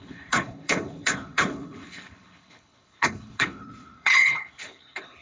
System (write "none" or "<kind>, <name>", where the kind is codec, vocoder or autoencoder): codec, HILCodec